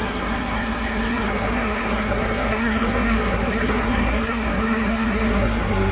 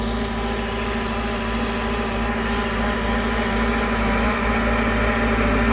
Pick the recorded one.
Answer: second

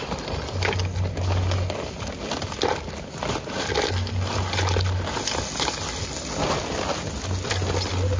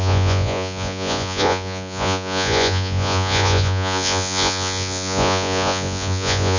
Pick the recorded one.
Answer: first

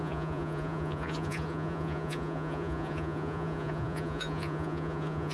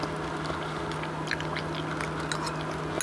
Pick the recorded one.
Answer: second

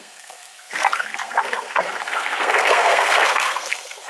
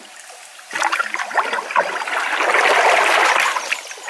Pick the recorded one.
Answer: second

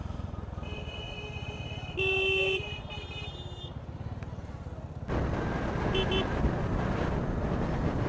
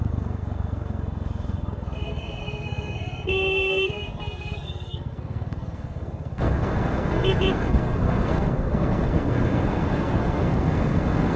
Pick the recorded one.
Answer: first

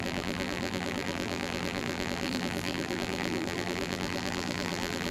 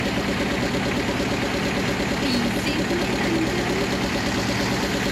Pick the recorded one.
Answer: second